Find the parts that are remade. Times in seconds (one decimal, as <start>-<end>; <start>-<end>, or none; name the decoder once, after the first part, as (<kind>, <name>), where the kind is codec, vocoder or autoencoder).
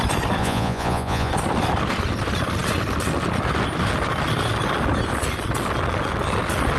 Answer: 0.4-1.3 (vocoder, Vocos)